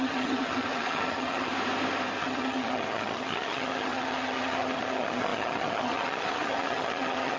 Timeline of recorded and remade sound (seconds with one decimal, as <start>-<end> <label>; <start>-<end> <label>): 0.0-1.5 remade; 1.5-2.2 recorded; 2.2-7.4 remade